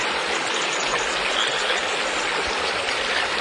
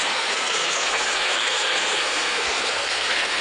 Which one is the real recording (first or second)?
first